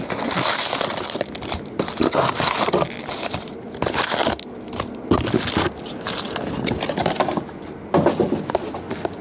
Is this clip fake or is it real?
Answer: real